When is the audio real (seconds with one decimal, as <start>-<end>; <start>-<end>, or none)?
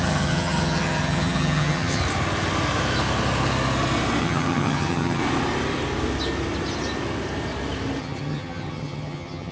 2.0-4.2; 5.2-8.0